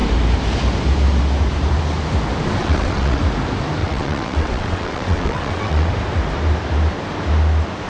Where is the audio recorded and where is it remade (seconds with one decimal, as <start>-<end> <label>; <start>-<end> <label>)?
0.0-2.6 recorded; 2.6-3.2 remade; 3.2-3.8 recorded; 3.8-5.9 remade; 5.9-7.9 recorded